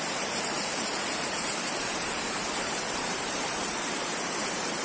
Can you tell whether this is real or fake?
fake